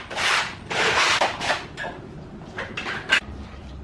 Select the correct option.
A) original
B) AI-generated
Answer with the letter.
A